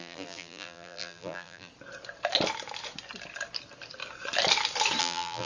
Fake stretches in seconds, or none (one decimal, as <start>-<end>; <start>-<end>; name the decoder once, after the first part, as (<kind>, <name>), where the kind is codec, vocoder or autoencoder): 0.0-1.7 (vocoder, BigVGAN v2); 5.0-5.5